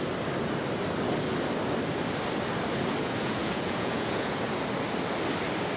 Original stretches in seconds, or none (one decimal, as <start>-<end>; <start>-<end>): 0.0-3.0; 4.5-5.8